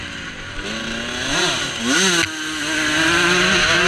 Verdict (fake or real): real